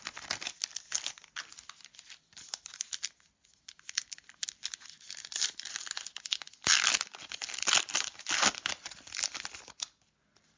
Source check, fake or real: real